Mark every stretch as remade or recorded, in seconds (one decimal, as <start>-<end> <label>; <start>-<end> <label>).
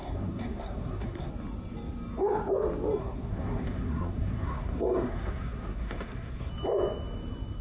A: 0.0-1.3 remade; 1.3-3.0 recorded; 3.0-6.5 remade; 6.5-7.6 recorded